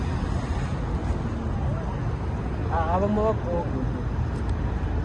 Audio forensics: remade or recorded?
recorded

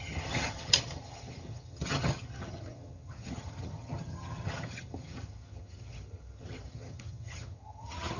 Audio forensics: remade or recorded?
remade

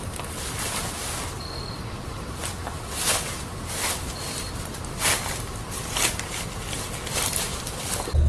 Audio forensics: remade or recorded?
recorded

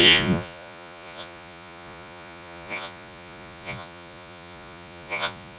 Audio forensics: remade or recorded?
remade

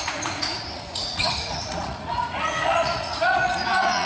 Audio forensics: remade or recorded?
remade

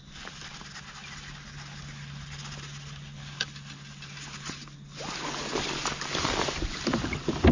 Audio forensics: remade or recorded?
recorded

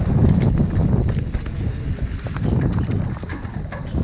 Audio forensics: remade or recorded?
recorded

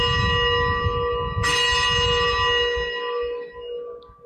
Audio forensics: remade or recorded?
recorded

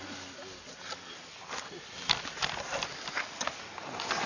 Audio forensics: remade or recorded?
recorded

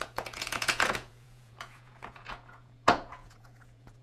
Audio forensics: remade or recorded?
remade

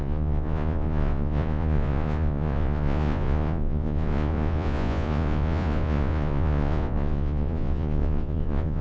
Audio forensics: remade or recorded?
remade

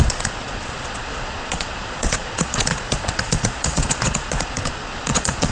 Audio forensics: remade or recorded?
remade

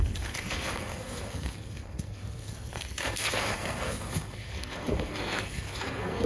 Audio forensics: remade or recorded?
remade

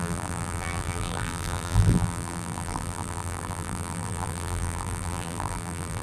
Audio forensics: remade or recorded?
remade